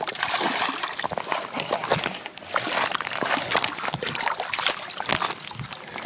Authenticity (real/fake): real